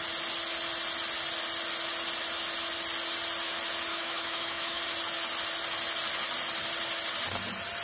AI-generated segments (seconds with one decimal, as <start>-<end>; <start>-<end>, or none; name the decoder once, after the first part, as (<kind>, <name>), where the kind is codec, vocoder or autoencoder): 3.9-4.8 (autoencoder, DAC-VAE)